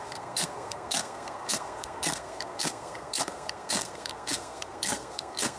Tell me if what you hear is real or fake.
fake